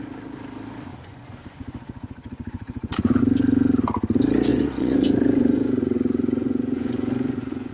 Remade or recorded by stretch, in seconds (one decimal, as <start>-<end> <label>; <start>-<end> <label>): 0.0-0.9 recorded; 0.9-3.2 remade; 3.2-4.5 recorded; 4.5-7.7 remade